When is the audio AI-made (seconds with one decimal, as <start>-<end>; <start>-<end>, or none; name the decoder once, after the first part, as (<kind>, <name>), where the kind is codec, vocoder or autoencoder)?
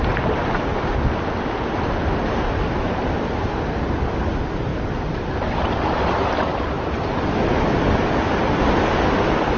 4.7-8.6 (vocoder, BigVGAN v2)